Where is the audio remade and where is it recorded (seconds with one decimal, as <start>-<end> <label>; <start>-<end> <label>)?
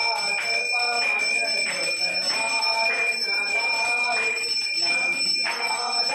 0.0-2.9 recorded; 2.9-6.1 remade